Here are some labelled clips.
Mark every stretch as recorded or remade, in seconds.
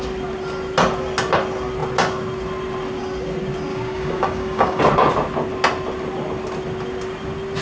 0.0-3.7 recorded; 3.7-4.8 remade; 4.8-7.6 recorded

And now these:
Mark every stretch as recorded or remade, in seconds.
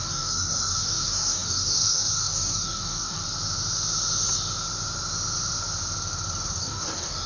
0.0-3.2 remade; 3.2-6.6 recorded; 6.6-7.3 remade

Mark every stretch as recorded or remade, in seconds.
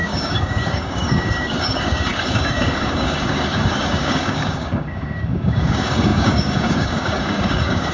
0.0-7.9 remade